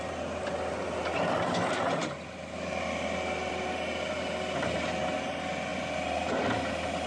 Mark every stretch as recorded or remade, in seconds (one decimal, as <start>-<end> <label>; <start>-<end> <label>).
0.0-7.1 recorded